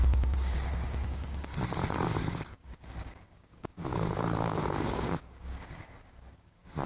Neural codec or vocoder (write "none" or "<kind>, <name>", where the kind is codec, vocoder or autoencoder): codec, DAC